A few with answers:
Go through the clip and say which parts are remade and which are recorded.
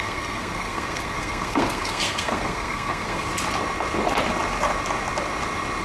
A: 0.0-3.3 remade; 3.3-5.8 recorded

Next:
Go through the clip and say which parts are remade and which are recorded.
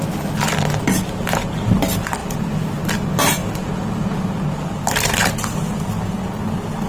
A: 0.0-2.2 recorded; 2.2-2.7 remade; 2.7-6.9 recorded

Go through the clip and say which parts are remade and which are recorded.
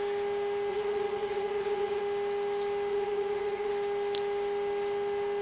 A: 0.0-0.7 recorded; 0.7-2.0 remade; 2.0-2.9 recorded; 2.9-3.7 remade; 3.7-5.4 recorded